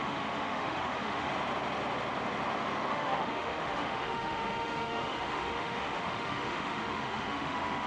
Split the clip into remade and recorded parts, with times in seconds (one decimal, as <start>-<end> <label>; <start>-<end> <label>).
0.0-1.3 remade; 1.3-2.9 recorded; 2.9-7.9 remade